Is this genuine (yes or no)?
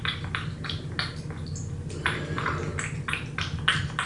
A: yes